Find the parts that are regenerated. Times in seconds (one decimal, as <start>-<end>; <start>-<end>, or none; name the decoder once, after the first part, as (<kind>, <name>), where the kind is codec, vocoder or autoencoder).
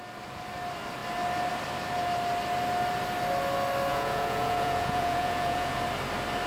3.9-5.8 (vocoder, Vocos)